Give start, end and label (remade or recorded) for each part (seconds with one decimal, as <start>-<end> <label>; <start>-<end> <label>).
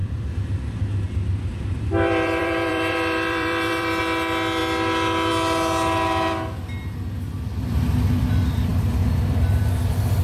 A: 0.0-0.7 remade; 0.7-1.5 recorded; 1.5-4.0 remade; 4.0-8.7 recorded; 8.7-9.6 remade; 9.6-10.2 recorded